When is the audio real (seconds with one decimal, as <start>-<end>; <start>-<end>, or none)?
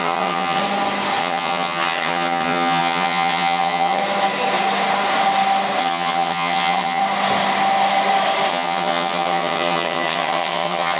0.6-1.2; 4.0-5.8; 7.0-8.5